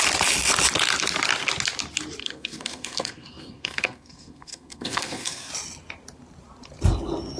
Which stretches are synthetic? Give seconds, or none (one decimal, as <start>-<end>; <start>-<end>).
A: 2.2-5.5